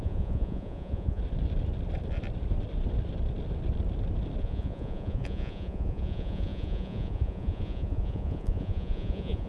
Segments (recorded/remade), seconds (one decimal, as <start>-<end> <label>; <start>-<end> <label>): 0.0-1.2 remade; 1.2-4.4 recorded; 4.4-9.5 remade